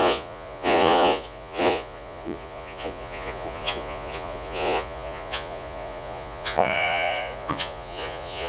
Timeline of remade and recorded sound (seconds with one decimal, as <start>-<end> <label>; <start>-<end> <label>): 0.0-8.5 remade